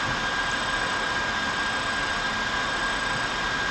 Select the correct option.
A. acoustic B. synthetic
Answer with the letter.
A